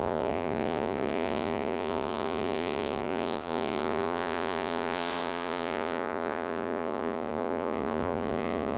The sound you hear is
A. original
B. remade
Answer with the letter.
B